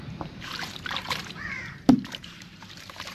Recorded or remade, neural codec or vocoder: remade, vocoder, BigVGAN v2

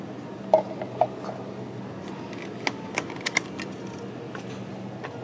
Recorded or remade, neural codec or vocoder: recorded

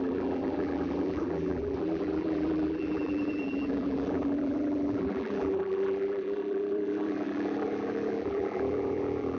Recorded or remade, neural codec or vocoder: remade, vocoder, BigVGAN v2